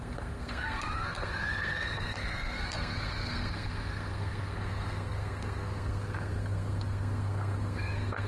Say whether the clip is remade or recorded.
remade